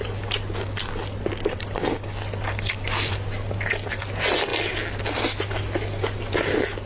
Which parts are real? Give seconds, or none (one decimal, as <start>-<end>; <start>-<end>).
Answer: 0.0-6.9